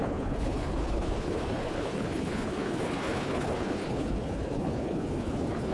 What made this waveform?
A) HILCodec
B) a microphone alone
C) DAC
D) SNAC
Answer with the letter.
A